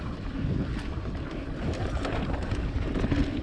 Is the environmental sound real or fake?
fake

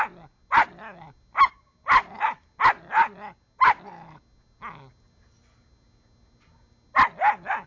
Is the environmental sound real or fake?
real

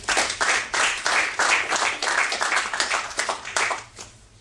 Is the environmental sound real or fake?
fake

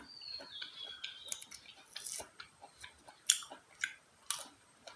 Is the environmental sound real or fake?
real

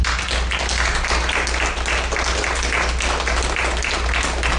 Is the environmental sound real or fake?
real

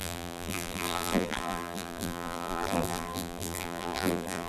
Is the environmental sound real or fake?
fake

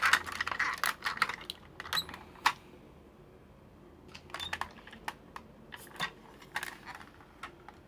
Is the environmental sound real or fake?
real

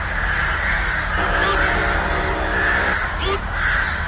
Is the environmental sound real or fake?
real